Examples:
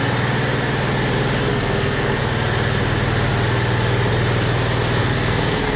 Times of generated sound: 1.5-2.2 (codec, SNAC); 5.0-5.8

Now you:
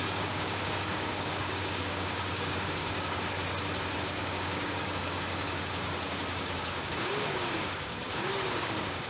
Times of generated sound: 0.0-3.4 (codec, DAC); 4.0-9.1

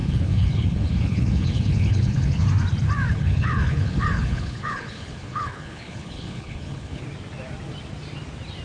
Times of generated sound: 0.0-2.4 (codec, HILCodec); 3.1-7.0

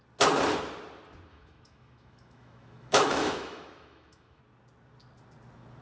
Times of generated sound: 1.3-4.4 (autoencoder, DAC-VAE)

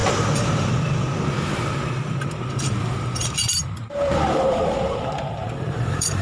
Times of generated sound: 0.0-6.2 (vocoder, BigVGAN v2)

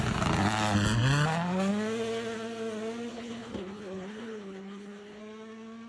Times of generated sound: 3.1-5.2 (codec, HILCodec)